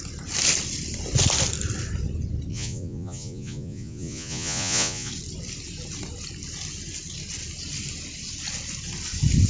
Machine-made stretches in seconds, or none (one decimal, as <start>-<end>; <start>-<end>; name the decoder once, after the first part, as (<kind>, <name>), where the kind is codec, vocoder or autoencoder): 2.5-5.1 (vocoder, Vocos)